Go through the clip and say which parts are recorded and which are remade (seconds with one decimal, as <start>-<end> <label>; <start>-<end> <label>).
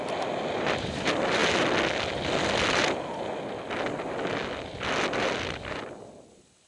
0.0-6.7 recorded